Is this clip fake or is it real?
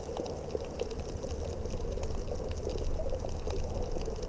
real